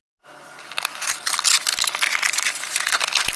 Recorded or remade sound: recorded